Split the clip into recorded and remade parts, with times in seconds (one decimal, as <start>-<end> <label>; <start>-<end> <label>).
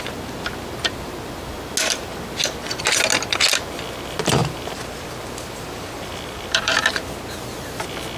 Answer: 0.0-4.4 recorded; 4.4-6.9 remade; 6.9-8.2 recorded